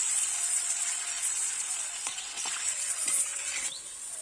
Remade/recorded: remade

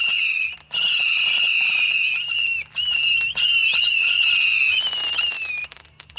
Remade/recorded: recorded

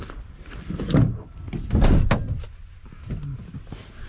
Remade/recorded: recorded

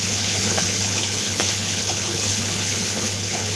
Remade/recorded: remade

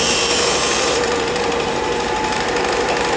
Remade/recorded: remade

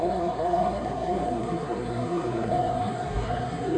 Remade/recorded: remade